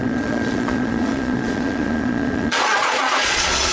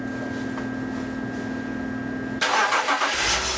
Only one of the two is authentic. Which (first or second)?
second